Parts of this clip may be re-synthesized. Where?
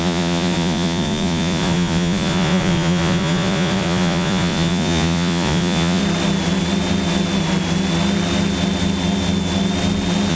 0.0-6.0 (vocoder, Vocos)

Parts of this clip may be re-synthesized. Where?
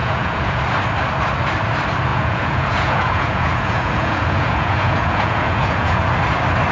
0.0-0.6 (vocoder, Vocos); 2.1-6.1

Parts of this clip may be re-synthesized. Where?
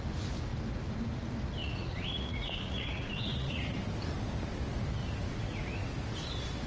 1.6-3.8 (vocoder, Vocos); 5.0-5.9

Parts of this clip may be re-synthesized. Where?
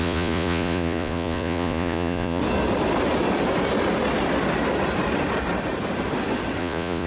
0.0-2.4 (vocoder, Vocos); 6.6-7.1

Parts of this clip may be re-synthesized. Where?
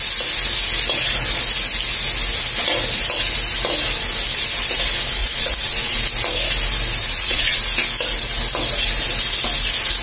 5.2-5.9 (vocoder, Vocos); 7.0-7.6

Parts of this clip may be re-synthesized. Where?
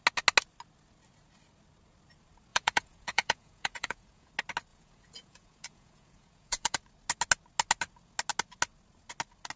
2.5-4.3 (vocoder, Vocos); 4.7-6.8